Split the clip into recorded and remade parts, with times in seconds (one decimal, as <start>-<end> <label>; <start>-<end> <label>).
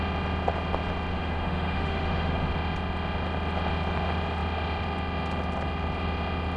0.0-1.1 recorded; 1.1-2.5 remade; 2.5-6.6 recorded